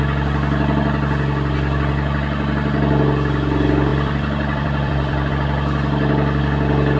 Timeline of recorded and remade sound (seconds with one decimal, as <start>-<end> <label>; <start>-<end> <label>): 0.0-3.9 recorded; 3.9-5.3 remade; 5.3-7.0 recorded